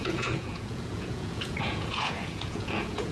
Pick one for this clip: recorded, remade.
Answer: remade